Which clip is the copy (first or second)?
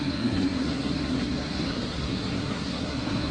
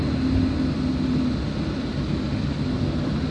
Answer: first